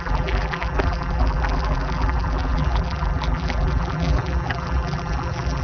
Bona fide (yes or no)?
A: no